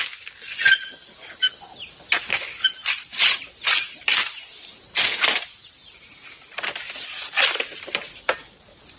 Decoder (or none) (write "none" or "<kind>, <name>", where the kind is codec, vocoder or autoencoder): none